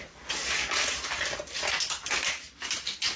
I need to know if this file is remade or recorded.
recorded